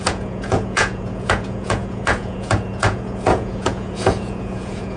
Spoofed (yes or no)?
yes